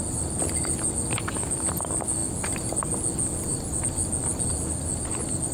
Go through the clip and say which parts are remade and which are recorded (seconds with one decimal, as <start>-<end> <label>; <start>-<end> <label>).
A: 0.0-5.5 recorded